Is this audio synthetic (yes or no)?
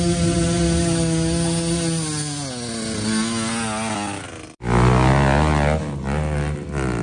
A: no